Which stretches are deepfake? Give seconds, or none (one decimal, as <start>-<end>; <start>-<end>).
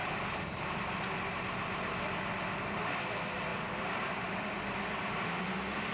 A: none